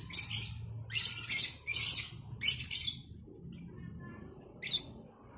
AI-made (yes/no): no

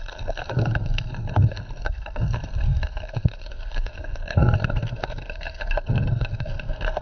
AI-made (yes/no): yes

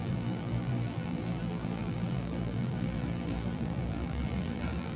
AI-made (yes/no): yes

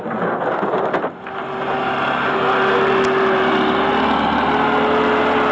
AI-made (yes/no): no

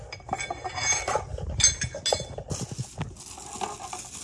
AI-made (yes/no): no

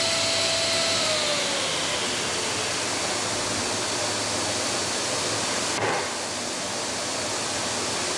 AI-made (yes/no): no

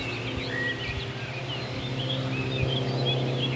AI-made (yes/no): no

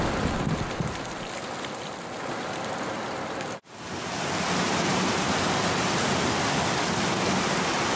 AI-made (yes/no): no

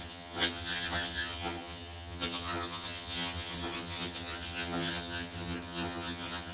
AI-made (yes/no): yes